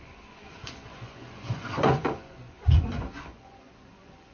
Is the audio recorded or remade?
remade